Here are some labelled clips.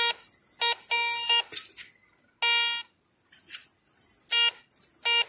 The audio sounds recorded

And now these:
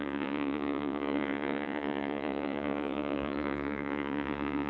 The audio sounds remade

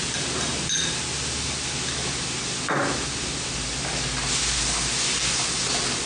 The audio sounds recorded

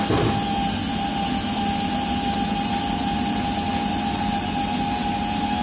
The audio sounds recorded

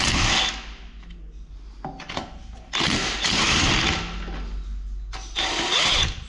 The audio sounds recorded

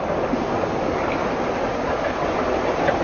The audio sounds recorded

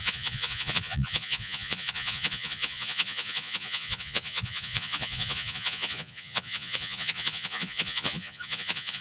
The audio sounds remade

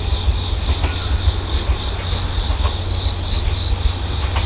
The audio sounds recorded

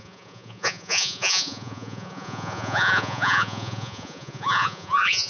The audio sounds remade